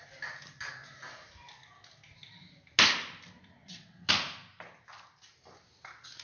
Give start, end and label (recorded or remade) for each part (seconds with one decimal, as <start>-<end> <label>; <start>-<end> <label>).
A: 0.0-3.6 recorded; 3.6-4.1 remade; 4.1-6.2 recorded